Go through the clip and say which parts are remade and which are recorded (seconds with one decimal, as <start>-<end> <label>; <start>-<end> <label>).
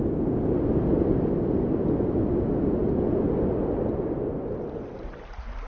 0.0-5.7 recorded